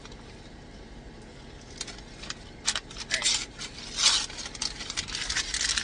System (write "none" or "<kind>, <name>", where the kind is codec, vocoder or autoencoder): none